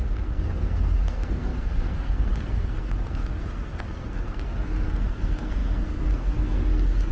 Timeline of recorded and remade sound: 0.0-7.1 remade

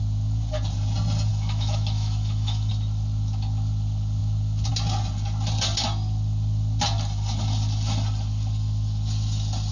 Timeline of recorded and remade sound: 0.0-1.3 recorded; 1.3-2.7 remade; 2.7-9.7 recorded